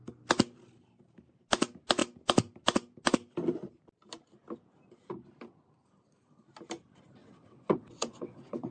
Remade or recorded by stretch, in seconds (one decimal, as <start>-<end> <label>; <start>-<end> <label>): 0.0-7.2 recorded; 7.2-8.7 remade